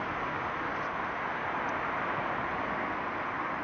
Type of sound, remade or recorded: recorded